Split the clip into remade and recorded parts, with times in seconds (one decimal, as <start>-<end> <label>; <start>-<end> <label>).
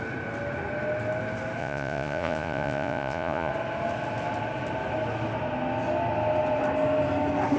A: 0.0-1.6 recorded; 1.6-3.5 remade; 3.5-7.6 recorded